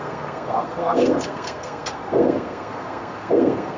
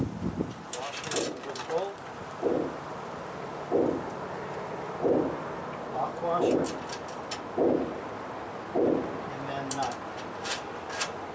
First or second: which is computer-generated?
first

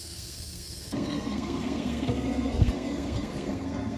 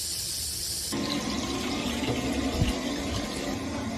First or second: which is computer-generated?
first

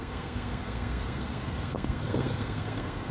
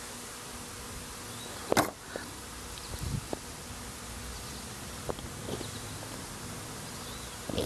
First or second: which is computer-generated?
first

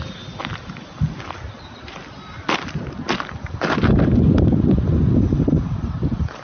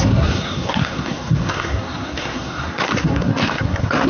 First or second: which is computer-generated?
second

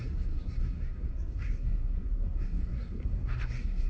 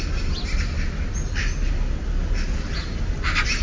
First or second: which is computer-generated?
first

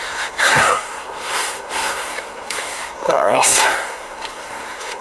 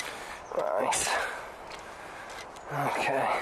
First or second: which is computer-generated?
first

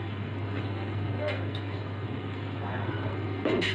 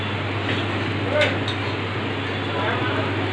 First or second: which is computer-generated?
first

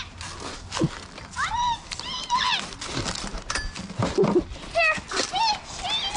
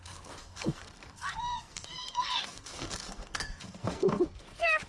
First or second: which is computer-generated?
second